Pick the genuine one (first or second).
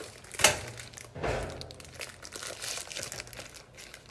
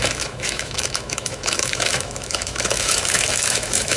first